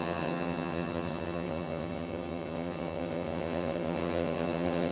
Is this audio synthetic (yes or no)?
yes